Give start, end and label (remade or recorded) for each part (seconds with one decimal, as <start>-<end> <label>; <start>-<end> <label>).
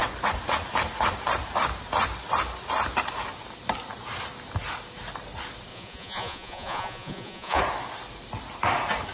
0.0-5.7 recorded; 5.7-7.6 remade; 7.6-9.1 recorded